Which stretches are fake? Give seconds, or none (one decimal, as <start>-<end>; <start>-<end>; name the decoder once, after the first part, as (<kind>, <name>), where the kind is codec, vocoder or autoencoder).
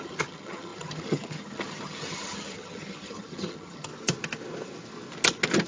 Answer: 0.0-3.9 (vocoder, HiFi-GAN)